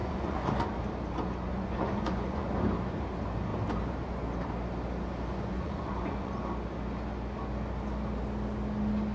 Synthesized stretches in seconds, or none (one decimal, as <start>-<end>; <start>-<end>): 0.0-0.6; 1.5-2.5; 5.3-6.3